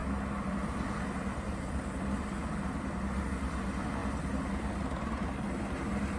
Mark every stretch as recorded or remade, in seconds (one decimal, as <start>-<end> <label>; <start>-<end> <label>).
0.0-6.2 recorded

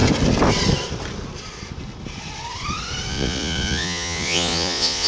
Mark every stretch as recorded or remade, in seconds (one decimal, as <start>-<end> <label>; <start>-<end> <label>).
0.0-3.1 recorded; 3.1-5.1 remade

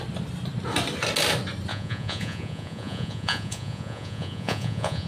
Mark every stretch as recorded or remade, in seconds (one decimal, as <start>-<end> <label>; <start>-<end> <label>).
0.0-1.7 recorded; 1.7-5.1 remade

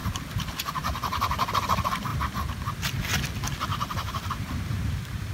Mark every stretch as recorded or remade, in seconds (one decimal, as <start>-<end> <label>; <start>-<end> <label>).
0.0-1.5 remade; 1.5-3.7 recorded; 3.7-5.3 remade